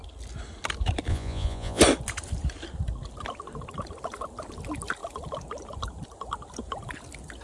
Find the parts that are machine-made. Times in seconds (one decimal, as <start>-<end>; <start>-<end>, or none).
1.1-1.8